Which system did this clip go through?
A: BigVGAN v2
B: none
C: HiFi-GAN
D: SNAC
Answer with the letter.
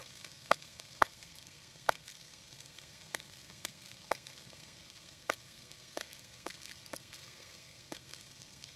D